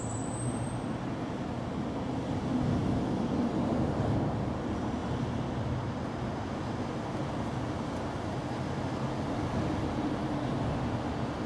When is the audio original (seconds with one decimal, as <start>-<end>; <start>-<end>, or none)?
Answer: 0.0-11.5